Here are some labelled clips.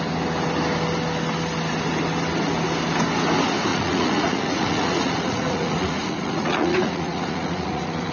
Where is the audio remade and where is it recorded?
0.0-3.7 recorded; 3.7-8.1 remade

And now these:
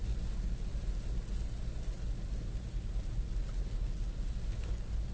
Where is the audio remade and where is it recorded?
0.0-5.1 recorded

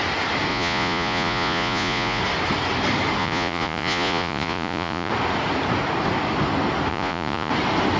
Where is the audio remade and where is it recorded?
0.0-0.5 recorded; 0.5-2.2 remade; 2.2-3.2 recorded; 3.2-5.1 remade; 5.1-6.9 recorded; 6.9-7.5 remade; 7.5-8.0 recorded

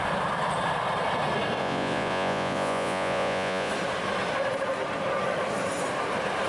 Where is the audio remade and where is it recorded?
0.0-1.6 recorded; 1.6-3.7 remade; 3.7-6.5 recorded

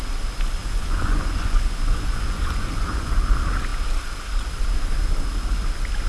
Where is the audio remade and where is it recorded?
0.0-0.6 recorded; 0.6-3.1 remade; 3.1-6.1 recorded

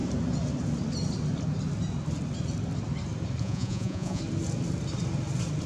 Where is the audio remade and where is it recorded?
0.0-3.4 recorded; 3.4-4.2 remade; 4.2-5.7 recorded

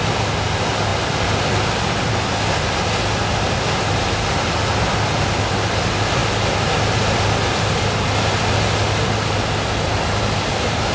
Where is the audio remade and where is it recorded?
0.0-10.9 recorded